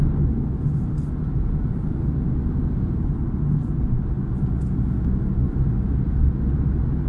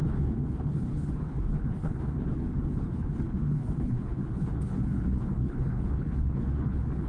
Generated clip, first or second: second